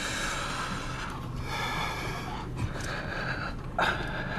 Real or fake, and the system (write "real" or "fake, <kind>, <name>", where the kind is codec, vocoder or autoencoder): real